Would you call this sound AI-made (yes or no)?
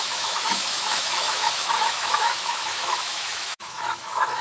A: yes